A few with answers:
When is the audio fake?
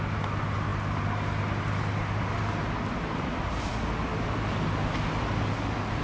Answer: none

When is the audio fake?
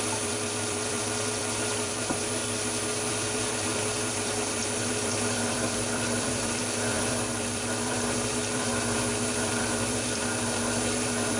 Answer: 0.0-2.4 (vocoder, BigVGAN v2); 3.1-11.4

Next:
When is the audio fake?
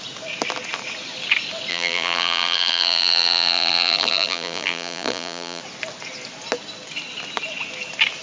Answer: 1.7-5.6 (vocoder, BigVGAN v2)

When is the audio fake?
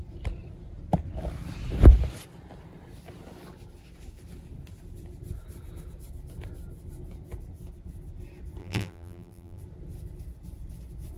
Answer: 8.6-9.6 (vocoder, BigVGAN v2)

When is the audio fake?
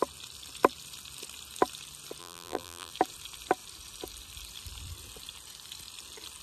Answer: 2.2-2.9 (vocoder, BigVGAN v2)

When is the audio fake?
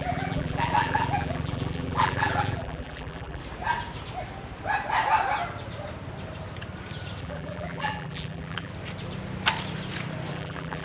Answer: 0.0-3.4 (vocoder, BigVGAN v2); 7.2-8.7; 10.3-10.8